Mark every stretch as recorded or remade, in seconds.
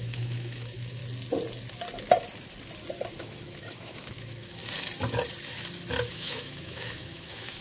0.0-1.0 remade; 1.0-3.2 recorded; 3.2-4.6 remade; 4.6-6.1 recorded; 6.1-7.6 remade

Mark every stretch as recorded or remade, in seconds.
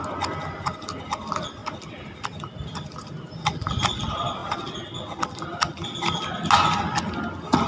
0.0-7.7 recorded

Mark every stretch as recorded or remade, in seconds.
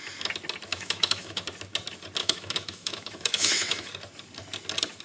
0.0-0.7 recorded; 0.7-1.4 remade; 1.4-2.2 recorded; 2.2-3.9 remade; 3.9-5.0 recorded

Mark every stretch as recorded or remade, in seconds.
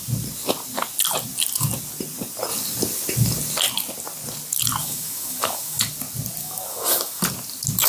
0.0-4.8 recorded; 4.8-5.8 remade; 5.8-6.4 recorded; 6.4-7.2 remade; 7.2-7.9 recorded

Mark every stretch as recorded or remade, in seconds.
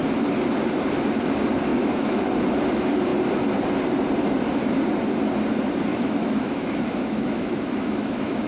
0.0-1.7 recorded; 1.7-2.2 remade; 2.2-5.9 recorded; 5.9-8.5 remade